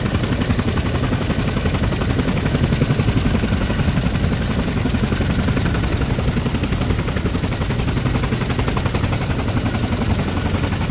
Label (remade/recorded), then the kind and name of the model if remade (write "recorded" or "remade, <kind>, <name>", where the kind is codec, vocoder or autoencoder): recorded